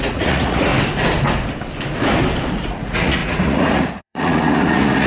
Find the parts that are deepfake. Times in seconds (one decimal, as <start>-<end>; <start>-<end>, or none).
0.0-0.7; 2.5-5.1